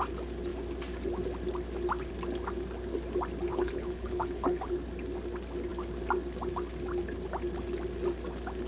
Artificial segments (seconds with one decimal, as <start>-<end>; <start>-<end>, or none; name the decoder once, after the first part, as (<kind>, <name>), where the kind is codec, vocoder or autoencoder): 3.5-4.7 (codec, HILCodec)